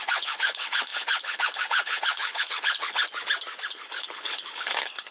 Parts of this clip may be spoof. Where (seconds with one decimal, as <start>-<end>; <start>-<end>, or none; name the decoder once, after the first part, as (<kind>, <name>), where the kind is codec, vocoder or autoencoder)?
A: 0.0-3.0 (codec, HILCodec); 3.7-5.1